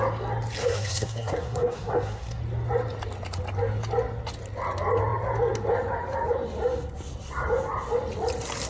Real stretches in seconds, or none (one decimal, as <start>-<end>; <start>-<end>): 0.0-0.6; 2.4-8.7

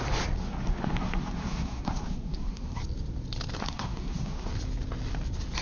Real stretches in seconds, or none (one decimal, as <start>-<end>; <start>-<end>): 0.0-0.4; 2.8-3.6; 4.5-5.6

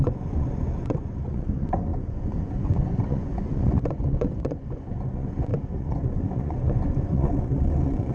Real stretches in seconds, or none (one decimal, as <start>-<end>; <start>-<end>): none